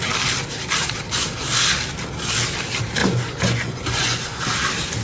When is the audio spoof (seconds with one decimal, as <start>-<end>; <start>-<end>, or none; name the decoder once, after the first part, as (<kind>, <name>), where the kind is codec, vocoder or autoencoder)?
3.0-4.4 (vocoder, Vocos)